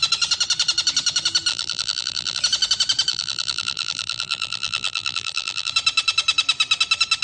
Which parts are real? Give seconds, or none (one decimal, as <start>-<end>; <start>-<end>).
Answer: 0.0-1.5; 2.4-3.1; 5.7-7.2